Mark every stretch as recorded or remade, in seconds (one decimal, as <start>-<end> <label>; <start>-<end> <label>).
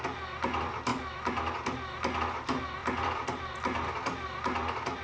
0.0-2.8 recorded; 2.8-3.4 remade; 3.4-5.0 recorded